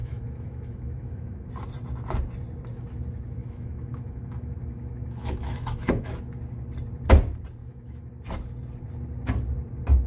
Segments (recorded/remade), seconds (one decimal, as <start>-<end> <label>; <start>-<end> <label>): 0.0-1.5 remade; 1.5-3.4 recorded; 3.4-6.1 remade; 6.1-7.6 recorded; 7.6-8.1 remade; 8.1-10.1 recorded